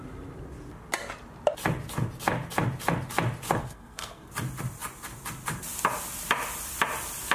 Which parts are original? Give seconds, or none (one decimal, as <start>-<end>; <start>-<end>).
0.0-3.6; 4.3-7.3